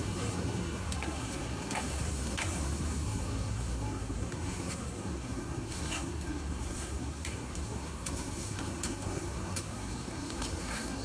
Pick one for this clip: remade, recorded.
remade